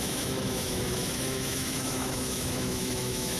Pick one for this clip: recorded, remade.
remade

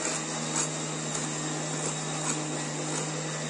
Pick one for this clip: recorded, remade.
recorded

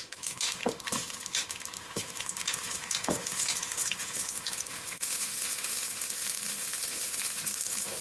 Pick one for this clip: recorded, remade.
remade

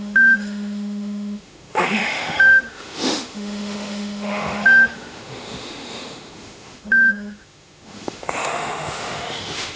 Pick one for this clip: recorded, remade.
remade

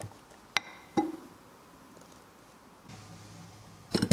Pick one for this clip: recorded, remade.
recorded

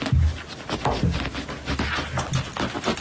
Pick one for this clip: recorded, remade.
recorded